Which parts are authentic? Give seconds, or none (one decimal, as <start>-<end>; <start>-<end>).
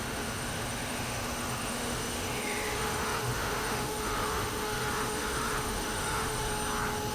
6.5-7.1